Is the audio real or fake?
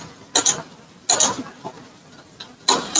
real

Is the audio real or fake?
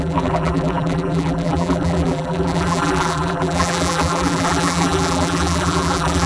fake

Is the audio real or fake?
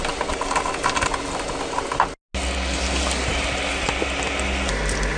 real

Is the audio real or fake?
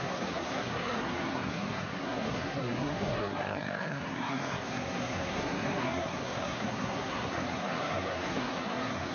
fake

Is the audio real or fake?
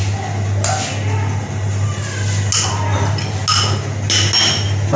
real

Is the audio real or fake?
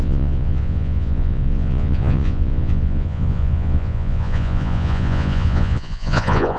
fake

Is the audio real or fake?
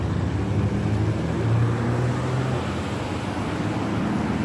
real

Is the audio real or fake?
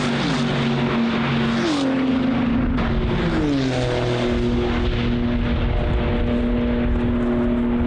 real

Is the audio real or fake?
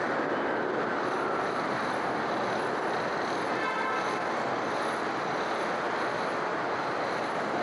real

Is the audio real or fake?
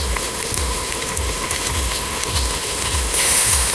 fake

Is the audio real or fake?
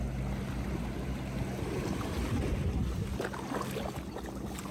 real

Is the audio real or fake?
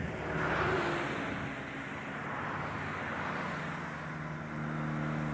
real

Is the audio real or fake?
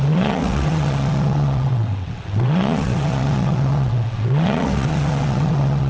fake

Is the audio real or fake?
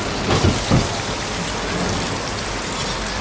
real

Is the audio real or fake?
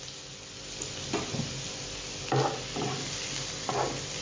real